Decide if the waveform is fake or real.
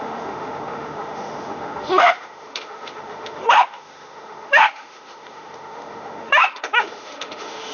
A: fake